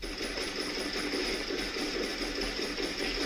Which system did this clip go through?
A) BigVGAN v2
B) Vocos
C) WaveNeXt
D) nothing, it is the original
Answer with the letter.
D